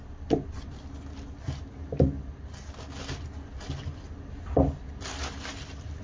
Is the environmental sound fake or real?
real